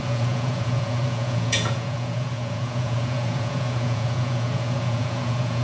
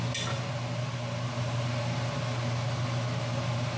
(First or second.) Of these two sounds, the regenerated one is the first